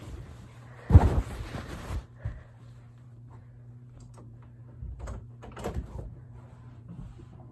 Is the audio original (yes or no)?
no